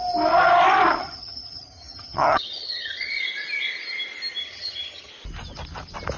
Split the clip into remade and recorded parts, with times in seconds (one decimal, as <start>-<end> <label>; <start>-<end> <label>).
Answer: 0.0-1.0 recorded; 1.0-3.2 remade; 3.2-4.4 recorded; 4.4-5.1 remade; 5.1-6.2 recorded